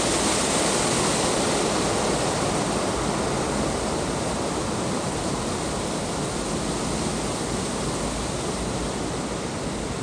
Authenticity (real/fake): real